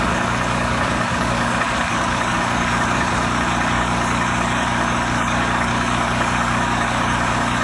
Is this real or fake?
fake